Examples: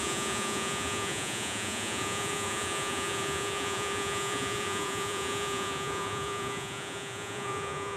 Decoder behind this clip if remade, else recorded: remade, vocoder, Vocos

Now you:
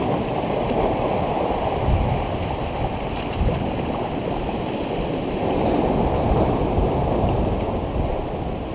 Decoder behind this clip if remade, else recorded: recorded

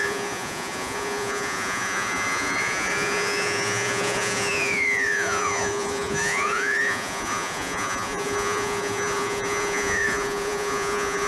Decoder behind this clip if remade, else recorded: remade, vocoder, Vocos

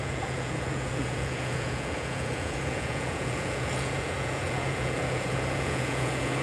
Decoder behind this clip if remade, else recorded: remade, vocoder, Vocos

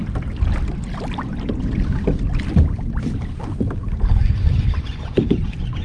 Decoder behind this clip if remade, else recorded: recorded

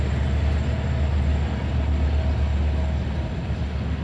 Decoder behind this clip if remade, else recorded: recorded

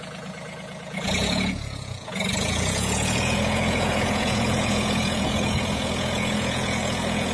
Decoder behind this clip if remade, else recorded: remade, vocoder, Vocos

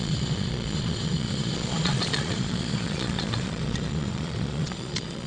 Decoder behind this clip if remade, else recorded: remade, vocoder, Vocos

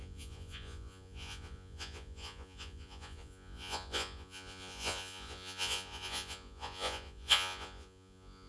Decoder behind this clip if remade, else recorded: remade, vocoder, Vocos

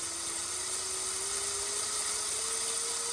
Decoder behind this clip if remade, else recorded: recorded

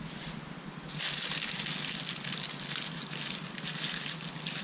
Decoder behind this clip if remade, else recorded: recorded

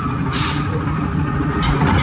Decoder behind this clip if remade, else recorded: remade, vocoder, Vocos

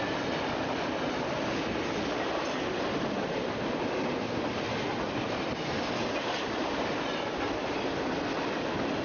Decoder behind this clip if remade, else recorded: recorded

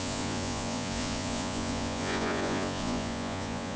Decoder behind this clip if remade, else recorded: remade, vocoder, Vocos